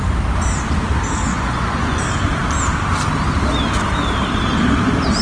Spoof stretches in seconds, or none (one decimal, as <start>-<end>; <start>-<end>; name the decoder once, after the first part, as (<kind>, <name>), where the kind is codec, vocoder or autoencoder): 1.3-2.0 (vocoder, Vocos)